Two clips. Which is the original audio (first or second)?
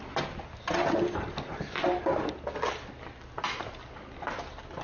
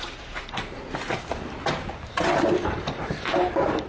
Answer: first